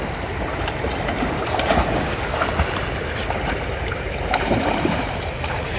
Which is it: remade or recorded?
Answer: remade